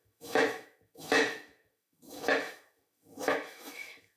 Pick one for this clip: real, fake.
fake